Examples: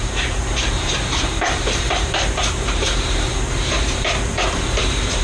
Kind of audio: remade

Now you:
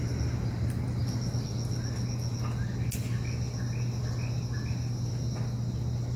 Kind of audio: recorded